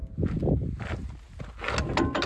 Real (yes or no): yes